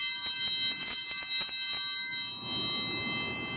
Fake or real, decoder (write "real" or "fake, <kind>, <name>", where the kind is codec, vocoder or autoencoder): real